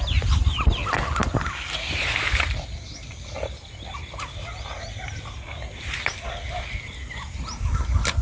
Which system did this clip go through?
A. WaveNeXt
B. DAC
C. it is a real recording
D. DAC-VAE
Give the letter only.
C